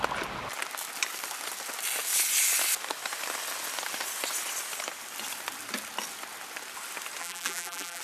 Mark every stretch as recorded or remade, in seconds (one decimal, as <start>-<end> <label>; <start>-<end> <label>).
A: 0.0-7.2 recorded; 7.2-8.0 remade